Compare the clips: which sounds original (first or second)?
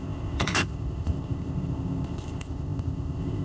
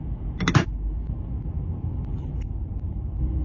second